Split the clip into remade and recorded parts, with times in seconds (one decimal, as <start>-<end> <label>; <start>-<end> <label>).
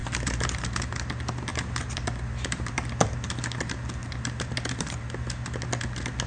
0.0-0.9 remade; 0.9-1.5 recorded; 1.5-3.3 remade; 3.3-4.0 recorded; 4.0-5.0 remade; 5.0-6.3 recorded